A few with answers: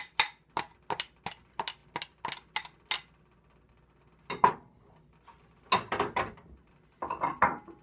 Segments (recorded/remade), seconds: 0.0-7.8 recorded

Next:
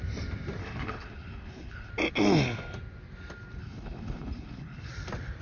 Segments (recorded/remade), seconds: 0.0-0.6 recorded; 0.6-1.9 remade; 1.9-3.6 recorded; 3.6-4.9 remade; 4.9-5.4 recorded